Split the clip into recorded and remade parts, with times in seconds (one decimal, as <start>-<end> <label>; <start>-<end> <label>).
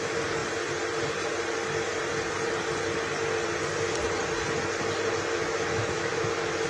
0.0-5.3 recorded; 5.3-6.3 remade; 6.3-6.7 recorded